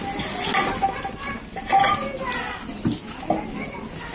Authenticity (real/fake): real